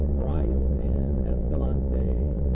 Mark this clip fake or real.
fake